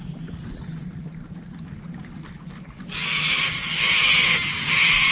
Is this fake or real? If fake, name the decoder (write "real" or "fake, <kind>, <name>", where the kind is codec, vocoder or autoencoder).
real